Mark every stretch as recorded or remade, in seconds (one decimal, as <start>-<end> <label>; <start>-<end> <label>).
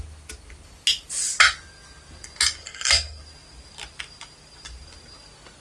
0.0-2.6 recorded; 2.6-3.2 remade; 3.2-5.6 recorded